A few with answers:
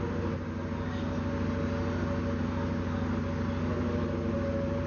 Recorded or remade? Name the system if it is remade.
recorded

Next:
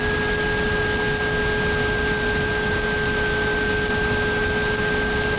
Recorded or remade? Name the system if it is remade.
recorded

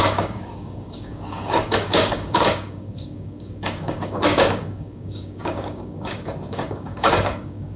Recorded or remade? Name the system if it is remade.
remade, codec, DAC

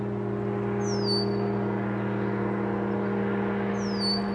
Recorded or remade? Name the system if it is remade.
recorded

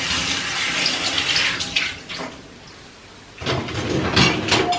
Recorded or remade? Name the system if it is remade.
recorded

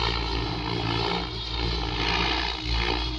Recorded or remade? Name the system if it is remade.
recorded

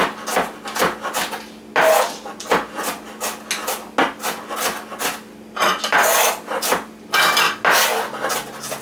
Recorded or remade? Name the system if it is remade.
recorded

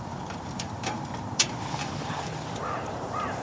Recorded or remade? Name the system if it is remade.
remade, vocoder, BigVGAN v2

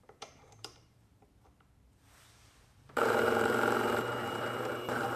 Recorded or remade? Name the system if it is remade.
remade, vocoder, BigVGAN v2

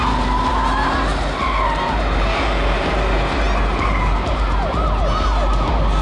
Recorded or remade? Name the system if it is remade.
recorded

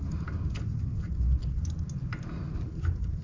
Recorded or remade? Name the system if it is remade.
recorded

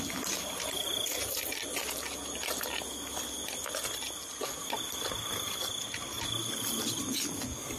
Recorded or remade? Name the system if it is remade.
recorded